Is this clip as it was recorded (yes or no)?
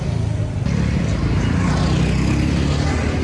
yes